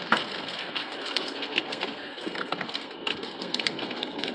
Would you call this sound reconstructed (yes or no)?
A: yes